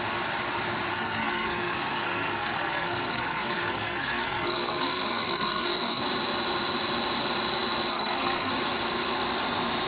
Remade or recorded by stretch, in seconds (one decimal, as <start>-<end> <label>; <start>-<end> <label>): 0.0-0.9 recorded; 0.9-6.0 remade; 6.0-7.9 recorded; 7.9-8.5 remade; 8.5-9.9 recorded